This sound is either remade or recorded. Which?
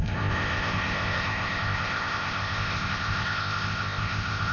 remade